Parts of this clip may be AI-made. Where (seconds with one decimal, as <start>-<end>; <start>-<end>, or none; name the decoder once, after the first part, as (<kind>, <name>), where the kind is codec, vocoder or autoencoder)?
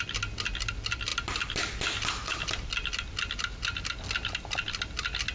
none